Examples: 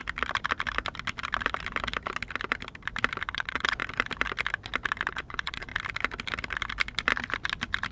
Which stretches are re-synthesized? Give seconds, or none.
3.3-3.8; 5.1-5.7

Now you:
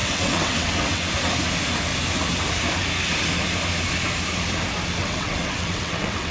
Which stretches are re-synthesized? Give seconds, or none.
0.0-1.0; 5.0-6.3

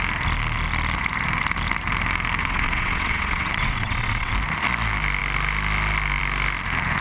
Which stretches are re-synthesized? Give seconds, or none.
2.4-4.3

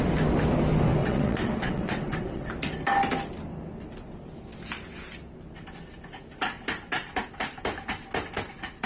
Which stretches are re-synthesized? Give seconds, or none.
1.0-2.5

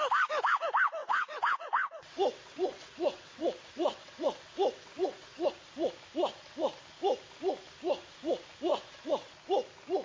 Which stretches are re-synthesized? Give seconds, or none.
1.0-5.5; 8.7-9.3

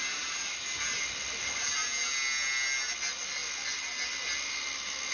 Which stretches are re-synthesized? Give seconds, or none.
none